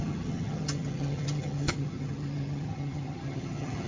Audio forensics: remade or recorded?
remade